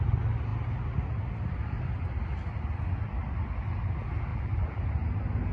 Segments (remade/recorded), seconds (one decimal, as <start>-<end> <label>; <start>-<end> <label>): 0.0-4.3 recorded; 4.3-4.8 remade; 4.8-5.5 recorded